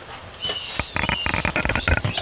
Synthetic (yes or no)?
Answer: no